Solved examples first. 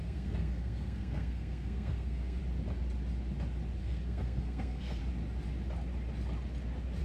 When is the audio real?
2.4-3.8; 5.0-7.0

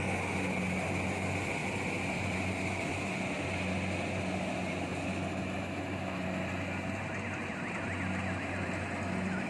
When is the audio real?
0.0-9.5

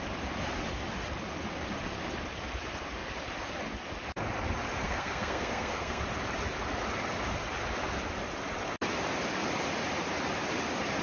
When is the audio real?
0.0-4.8; 6.0-11.0